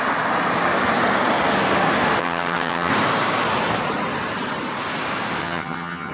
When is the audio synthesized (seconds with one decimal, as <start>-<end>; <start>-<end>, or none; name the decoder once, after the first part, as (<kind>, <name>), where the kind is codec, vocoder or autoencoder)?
2.2-2.9 (vocoder, HiFi-GAN); 5.4-6.1